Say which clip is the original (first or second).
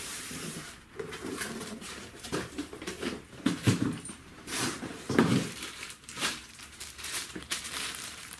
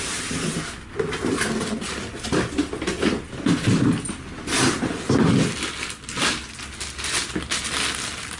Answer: second